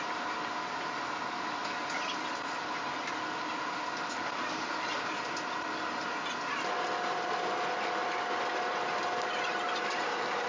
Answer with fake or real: real